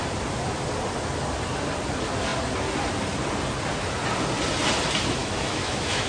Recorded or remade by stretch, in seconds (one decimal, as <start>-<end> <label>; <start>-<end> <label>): 0.0-5.2 recorded; 5.2-6.1 remade